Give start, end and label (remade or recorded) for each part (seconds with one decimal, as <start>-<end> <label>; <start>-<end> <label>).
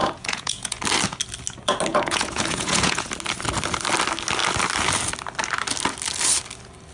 0.0-0.8 remade; 0.8-1.9 recorded; 1.9-3.1 remade; 3.1-6.9 recorded